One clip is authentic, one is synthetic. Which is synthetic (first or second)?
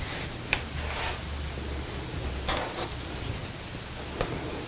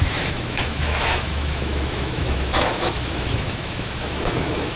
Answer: second